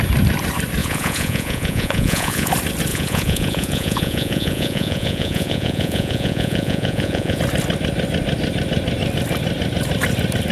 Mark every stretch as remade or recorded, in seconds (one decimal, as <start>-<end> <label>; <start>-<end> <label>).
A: 0.0-0.8 recorded; 0.8-2.5 remade; 2.5-2.9 recorded; 2.9-7.4 remade; 7.4-10.5 recorded